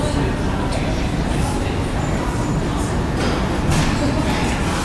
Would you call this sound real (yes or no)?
yes